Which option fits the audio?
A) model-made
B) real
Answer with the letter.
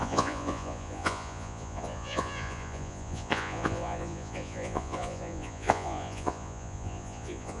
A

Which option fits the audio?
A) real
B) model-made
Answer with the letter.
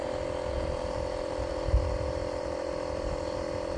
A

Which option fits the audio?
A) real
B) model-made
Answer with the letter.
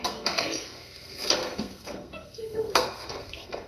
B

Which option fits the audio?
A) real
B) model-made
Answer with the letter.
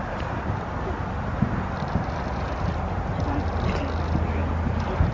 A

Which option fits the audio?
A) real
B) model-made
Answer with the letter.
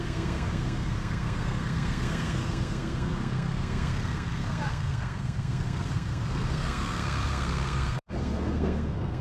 B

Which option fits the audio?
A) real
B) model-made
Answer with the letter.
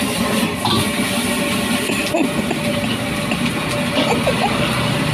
A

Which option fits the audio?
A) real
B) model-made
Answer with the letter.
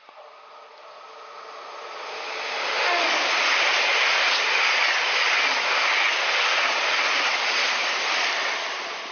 A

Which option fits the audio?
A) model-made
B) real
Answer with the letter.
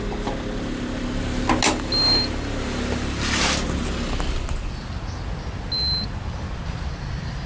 B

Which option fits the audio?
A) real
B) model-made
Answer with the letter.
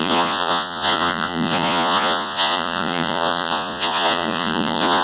B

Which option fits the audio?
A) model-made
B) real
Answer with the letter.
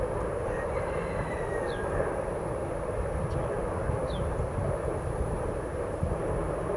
A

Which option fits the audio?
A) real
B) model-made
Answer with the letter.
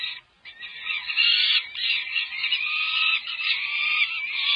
A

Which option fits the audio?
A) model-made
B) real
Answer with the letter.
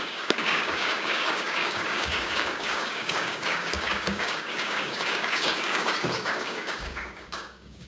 A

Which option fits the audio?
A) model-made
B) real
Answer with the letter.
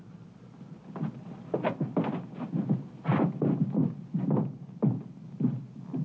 B